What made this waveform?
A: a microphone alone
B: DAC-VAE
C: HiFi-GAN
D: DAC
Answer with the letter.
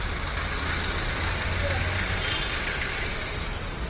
A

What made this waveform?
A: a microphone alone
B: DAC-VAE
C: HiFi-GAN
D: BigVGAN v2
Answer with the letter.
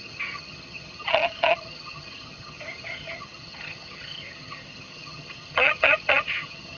C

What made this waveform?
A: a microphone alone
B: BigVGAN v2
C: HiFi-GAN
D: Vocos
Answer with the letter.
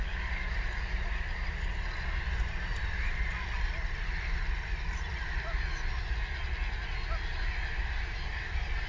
A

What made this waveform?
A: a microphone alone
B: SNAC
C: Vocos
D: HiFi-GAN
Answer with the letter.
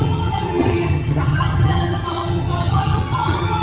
D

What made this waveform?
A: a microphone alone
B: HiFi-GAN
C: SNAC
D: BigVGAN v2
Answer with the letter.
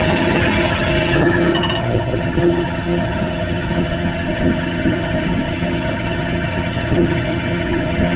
B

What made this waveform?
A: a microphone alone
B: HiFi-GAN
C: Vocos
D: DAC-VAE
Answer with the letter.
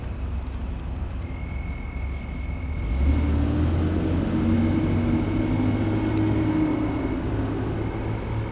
A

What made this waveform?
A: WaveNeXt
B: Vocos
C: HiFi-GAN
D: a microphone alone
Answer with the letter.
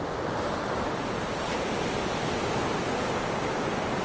D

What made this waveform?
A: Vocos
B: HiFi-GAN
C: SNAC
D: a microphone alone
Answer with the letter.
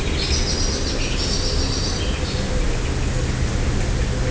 D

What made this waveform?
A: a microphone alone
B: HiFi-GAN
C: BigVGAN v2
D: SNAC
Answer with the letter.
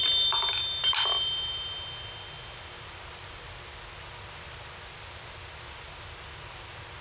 A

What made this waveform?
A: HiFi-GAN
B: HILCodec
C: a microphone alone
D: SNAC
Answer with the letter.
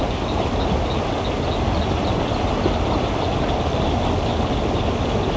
C